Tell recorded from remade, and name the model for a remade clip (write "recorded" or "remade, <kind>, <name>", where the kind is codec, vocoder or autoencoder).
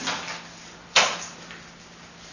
recorded